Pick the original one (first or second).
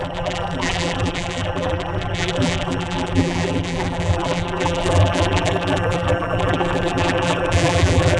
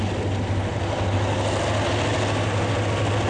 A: second